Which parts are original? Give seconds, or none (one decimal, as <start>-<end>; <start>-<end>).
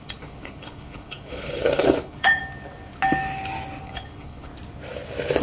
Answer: 2.4-3.8; 4.5-5.4